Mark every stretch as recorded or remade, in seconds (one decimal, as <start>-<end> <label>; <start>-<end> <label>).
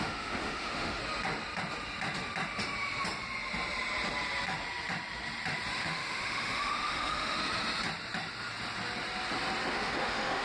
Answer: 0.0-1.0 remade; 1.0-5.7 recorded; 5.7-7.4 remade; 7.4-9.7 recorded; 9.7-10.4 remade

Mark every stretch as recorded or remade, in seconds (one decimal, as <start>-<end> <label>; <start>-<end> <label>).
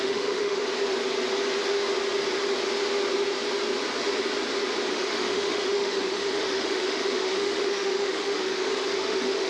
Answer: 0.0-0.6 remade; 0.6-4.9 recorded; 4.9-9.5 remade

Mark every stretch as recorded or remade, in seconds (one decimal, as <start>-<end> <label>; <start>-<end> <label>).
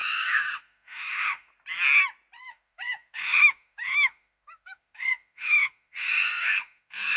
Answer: 0.0-1.5 remade; 1.5-2.4 recorded; 2.4-7.2 remade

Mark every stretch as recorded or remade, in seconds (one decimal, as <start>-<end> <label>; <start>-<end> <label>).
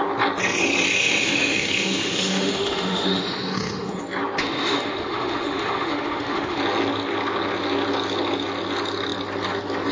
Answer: 0.0-1.0 recorded; 1.0-4.0 remade; 4.0-4.4 recorded; 4.4-6.6 remade; 6.6-9.9 recorded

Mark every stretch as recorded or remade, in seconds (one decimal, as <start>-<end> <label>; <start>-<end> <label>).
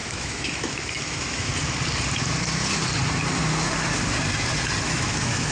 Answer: 0.0-1.5 remade; 1.5-4.8 recorded; 4.8-5.5 remade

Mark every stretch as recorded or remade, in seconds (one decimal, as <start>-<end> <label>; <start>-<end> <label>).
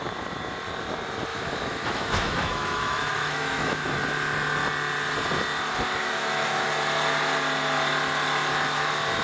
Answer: 0.0-1.3 recorded; 1.3-4.0 remade; 4.0-6.0 recorded; 6.0-6.7 remade; 6.7-9.2 recorded